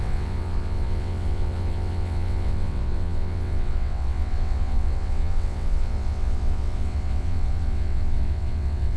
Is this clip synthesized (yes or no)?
yes